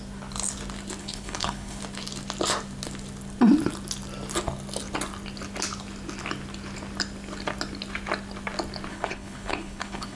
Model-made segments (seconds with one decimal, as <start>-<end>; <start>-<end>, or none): 1.0-1.8; 8.9-10.2